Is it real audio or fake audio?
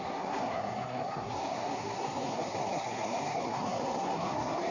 fake